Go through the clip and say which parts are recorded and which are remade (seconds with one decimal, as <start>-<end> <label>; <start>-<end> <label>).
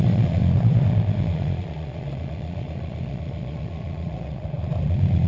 0.0-5.3 remade